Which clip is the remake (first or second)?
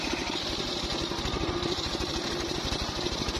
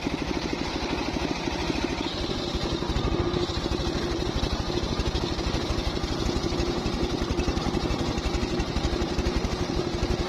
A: first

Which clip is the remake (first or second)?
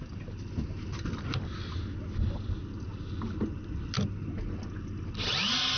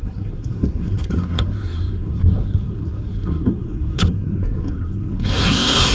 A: second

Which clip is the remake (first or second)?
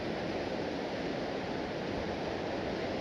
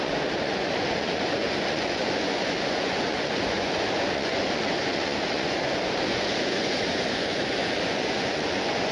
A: second